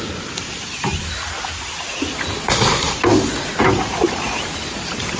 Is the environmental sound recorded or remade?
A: recorded